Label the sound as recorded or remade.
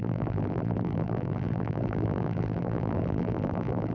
remade